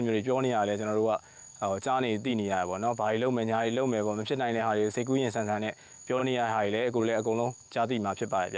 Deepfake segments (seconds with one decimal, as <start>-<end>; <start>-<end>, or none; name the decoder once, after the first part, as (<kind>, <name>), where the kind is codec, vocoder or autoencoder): 0.0-8.6 (autoencoder, DAC-VAE)

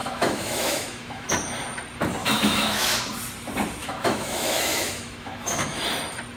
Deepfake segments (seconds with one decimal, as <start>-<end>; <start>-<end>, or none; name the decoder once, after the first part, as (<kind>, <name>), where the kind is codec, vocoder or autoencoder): 0.0-1.3 (autoencoder, DAC-VAE); 2.2-3.0; 3.8-5.8

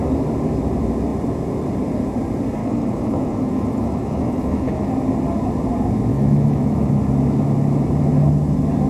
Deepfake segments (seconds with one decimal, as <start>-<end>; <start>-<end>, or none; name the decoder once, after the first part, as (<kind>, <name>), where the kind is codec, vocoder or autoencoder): 2.6-4.9 (autoencoder, DAC-VAE); 6.1-7.0

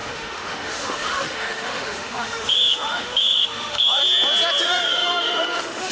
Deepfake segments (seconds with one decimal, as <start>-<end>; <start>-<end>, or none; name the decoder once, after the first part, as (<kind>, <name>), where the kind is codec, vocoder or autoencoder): 0.0-4.0 (autoencoder, DAC-VAE); 4.6-5.9

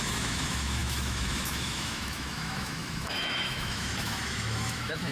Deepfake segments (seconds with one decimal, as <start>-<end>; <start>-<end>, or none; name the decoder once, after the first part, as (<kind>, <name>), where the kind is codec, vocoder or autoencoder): 0.0-5.1 (autoencoder, DAC-VAE)

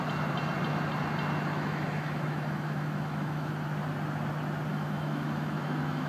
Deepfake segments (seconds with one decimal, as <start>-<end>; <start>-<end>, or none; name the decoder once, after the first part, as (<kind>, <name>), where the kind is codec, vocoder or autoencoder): 1.5-3.5 (autoencoder, DAC-VAE); 4.7-6.1

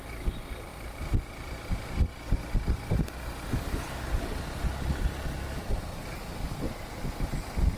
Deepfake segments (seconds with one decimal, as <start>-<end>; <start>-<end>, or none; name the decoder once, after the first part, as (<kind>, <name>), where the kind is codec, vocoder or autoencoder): none

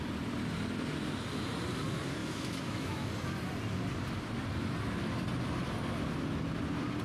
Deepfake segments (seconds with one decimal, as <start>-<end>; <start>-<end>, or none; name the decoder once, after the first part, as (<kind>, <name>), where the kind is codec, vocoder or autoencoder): 2.2-3.1 (autoencoder, DAC-VAE)